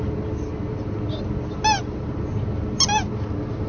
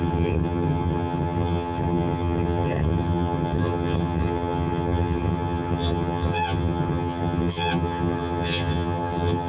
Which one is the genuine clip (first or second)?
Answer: first